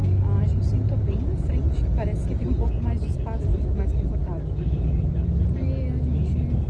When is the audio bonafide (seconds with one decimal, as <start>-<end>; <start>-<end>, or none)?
0.0-6.7